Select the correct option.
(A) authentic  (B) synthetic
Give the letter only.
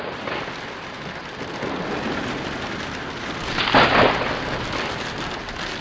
A